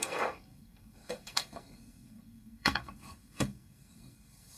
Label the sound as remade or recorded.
remade